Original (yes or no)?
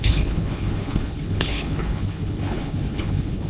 no